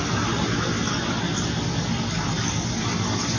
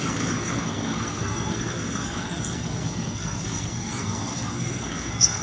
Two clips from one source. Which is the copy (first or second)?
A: second